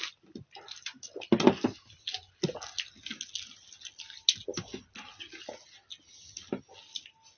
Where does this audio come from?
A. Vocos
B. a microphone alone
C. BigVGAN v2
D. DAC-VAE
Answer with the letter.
B